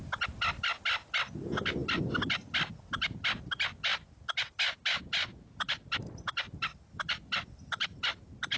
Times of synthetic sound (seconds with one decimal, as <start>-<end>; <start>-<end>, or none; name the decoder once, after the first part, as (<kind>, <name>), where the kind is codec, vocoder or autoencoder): none